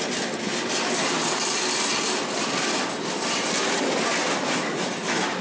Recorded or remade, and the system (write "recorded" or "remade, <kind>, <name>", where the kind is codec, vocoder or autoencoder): recorded